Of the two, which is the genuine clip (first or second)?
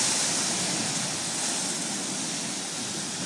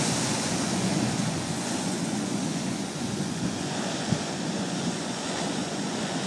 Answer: first